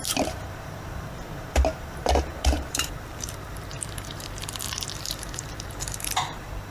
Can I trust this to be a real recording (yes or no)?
no